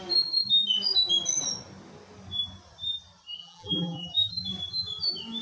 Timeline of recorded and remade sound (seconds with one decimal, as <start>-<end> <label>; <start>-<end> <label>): 0.0-3.4 recorded; 3.4-4.3 remade; 4.3-5.4 recorded